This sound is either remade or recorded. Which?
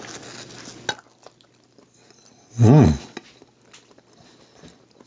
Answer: recorded